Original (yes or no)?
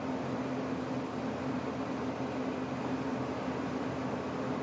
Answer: yes